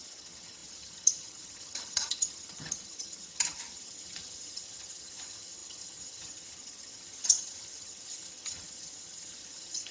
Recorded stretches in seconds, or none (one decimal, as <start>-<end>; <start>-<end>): none